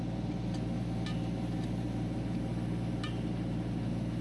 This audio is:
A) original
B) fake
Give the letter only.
A